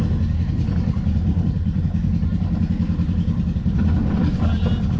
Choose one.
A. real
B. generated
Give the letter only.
A